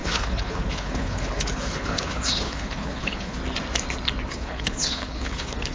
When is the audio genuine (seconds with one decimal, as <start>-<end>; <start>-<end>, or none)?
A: 3.4-4.3